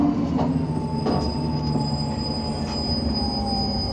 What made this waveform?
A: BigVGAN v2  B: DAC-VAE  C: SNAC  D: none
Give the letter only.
D